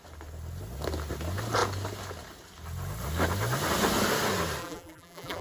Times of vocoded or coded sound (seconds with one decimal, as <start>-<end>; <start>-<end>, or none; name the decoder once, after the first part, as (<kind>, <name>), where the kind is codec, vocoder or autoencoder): 4.6-5.4 (vocoder, BigVGAN v2)